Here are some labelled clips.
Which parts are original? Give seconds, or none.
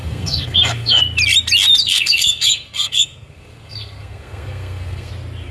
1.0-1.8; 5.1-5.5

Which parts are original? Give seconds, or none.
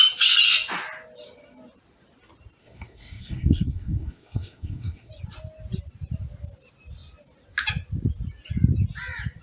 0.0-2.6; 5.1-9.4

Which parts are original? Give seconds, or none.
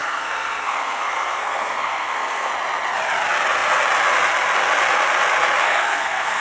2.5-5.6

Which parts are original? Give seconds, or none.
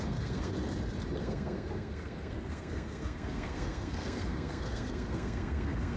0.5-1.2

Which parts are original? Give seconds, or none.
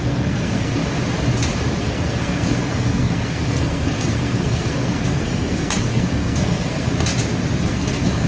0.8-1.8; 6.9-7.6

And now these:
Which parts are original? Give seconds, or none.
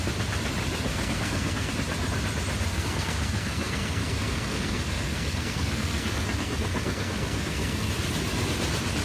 0.0-0.9; 1.7-2.7; 7.9-9.0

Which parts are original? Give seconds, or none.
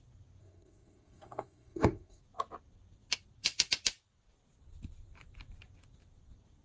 0.0-0.4; 2.2-6.6